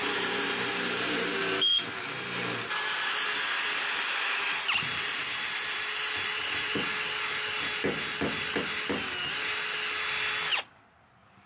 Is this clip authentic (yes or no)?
yes